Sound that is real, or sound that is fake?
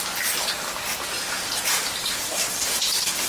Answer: real